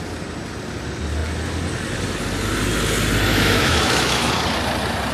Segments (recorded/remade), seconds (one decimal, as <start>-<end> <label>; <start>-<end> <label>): 0.0-3.3 recorded; 3.3-4.3 remade; 4.3-5.1 recorded